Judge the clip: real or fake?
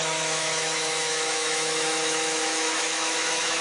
fake